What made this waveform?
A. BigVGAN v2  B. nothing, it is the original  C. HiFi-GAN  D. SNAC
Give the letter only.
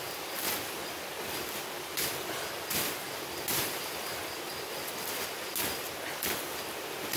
B